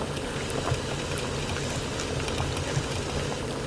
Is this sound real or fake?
real